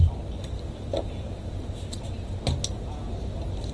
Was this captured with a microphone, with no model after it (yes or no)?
yes